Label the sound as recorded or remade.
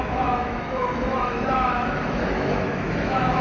remade